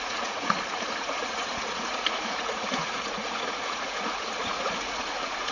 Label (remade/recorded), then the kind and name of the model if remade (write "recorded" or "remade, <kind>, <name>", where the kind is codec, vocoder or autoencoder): remade, vocoder, Vocos